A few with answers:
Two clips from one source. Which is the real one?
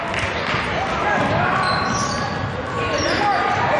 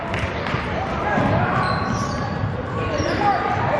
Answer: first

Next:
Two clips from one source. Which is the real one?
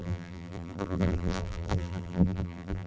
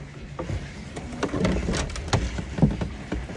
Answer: second